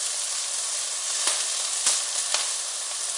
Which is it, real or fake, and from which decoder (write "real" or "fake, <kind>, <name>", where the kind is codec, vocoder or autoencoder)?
real